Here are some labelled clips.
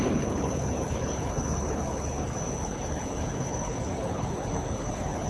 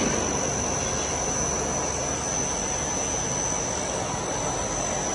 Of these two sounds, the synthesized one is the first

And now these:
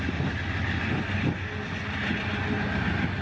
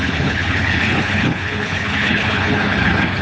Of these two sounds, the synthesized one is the second